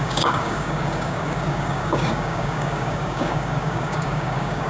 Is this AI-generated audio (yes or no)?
yes